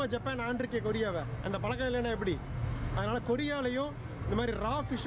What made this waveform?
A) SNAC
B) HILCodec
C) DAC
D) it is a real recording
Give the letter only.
D